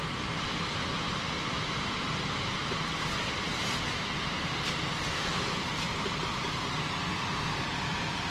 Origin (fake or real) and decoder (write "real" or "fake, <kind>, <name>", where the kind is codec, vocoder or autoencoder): real